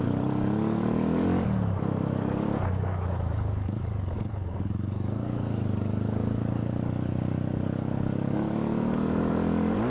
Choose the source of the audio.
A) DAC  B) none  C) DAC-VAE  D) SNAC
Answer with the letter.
A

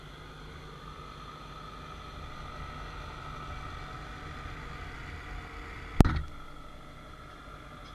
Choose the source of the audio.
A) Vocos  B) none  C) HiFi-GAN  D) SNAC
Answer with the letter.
B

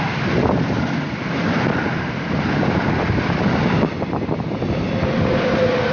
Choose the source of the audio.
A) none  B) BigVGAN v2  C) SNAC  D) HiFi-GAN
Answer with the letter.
A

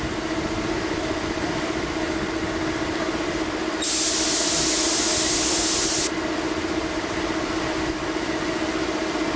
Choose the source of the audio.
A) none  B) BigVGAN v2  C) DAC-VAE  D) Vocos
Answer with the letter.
A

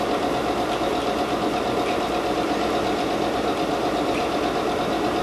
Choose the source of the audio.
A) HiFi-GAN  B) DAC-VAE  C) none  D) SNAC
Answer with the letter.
C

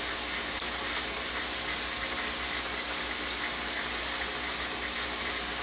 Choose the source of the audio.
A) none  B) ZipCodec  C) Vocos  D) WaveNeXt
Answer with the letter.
A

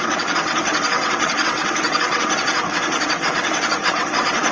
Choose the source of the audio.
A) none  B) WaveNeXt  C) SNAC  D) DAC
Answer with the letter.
B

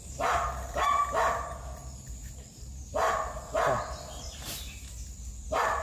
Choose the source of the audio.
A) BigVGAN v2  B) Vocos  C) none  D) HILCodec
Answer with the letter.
C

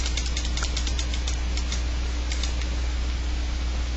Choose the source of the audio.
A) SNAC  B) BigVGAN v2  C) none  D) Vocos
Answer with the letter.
C